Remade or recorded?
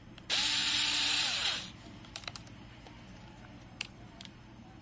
remade